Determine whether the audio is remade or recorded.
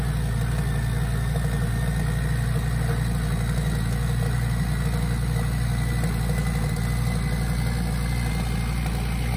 recorded